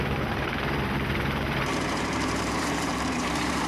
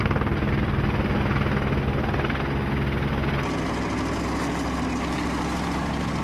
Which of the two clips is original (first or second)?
second